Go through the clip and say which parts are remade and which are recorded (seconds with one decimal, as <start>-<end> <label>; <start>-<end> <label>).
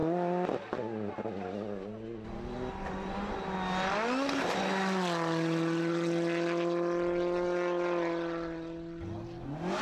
0.0-9.8 recorded